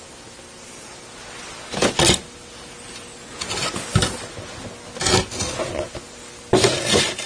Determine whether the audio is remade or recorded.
recorded